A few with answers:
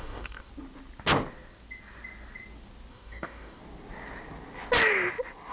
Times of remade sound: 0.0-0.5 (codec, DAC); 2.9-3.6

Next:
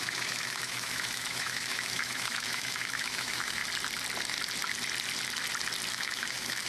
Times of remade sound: 0.0-3.6 (autoencoder, DAC-VAE); 5.9-6.7

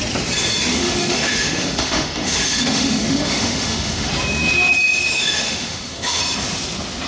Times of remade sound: 0.7-4.1 (autoencoder, DAC-VAE); 5.1-6.2

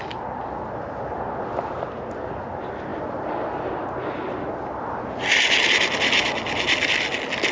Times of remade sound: none